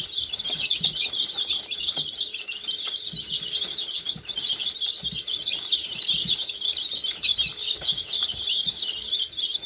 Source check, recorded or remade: remade